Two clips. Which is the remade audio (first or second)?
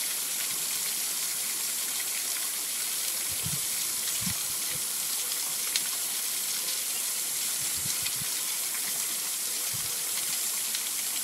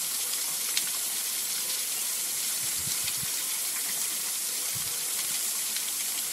second